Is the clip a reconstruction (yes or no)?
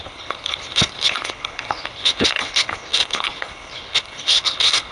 yes